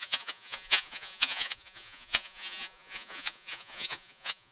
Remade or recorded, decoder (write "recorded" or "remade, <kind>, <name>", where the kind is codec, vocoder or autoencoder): remade, vocoder, Vocos